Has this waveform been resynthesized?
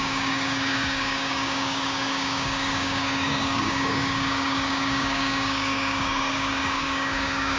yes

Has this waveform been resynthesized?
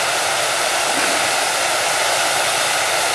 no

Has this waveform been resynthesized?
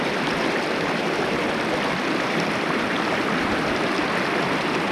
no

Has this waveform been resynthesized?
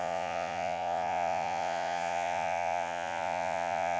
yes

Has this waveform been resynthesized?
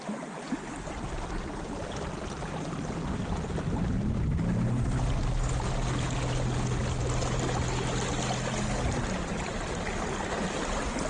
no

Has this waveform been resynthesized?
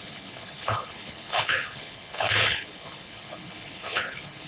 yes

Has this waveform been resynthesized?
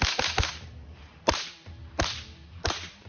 no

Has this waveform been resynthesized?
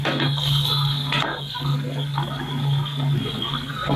yes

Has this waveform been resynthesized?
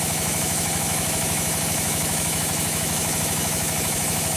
yes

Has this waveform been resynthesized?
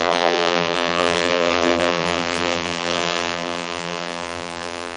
yes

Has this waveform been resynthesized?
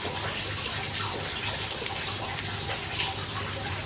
no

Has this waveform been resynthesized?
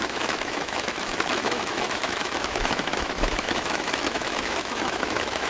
yes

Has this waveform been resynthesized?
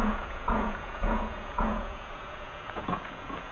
yes